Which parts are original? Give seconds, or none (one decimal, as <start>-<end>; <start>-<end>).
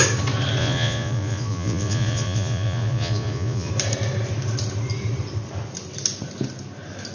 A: 0.0-0.6; 3.7-7.1